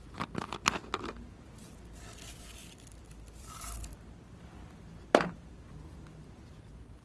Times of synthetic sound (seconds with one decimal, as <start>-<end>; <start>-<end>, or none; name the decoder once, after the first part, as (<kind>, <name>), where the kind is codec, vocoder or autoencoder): 0.0-1.1 (vocoder, BigVGAN v2); 2.6-7.0